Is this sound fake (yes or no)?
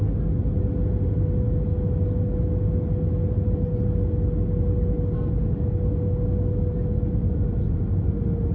no